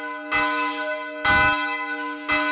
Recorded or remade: recorded